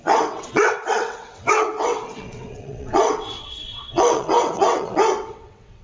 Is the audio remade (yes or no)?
yes